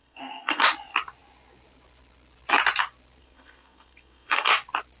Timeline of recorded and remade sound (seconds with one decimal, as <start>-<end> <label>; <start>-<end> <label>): 0.0-0.6 remade; 0.6-3.2 recorded; 3.2-4.5 remade; 4.5-5.0 recorded